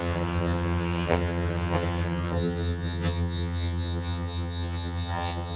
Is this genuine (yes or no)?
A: no